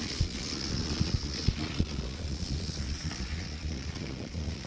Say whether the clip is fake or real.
fake